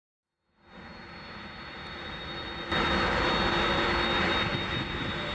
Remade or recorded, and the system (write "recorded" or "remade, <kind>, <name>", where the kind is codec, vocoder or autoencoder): recorded